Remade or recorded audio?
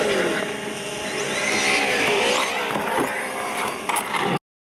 recorded